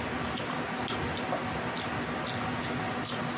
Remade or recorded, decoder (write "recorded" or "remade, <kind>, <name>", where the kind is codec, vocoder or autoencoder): recorded